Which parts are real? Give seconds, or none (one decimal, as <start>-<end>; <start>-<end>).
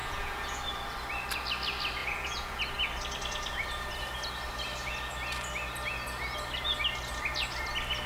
0.6-2.0; 2.6-8.1